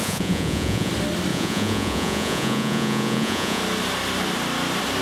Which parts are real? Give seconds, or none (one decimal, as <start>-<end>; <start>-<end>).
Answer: 0.9-1.3; 3.6-5.0